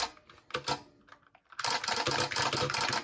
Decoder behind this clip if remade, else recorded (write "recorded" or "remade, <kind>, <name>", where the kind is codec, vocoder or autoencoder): recorded